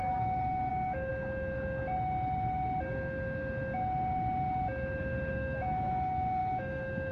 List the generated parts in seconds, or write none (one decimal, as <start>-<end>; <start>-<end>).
0.0-1.1; 5.3-7.1